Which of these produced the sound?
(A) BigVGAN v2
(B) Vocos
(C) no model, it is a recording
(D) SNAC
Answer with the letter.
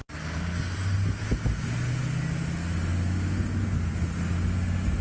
C